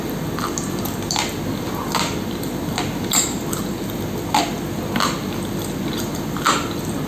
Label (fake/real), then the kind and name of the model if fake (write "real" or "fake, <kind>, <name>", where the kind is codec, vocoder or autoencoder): real